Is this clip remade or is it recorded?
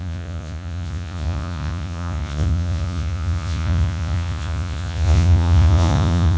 remade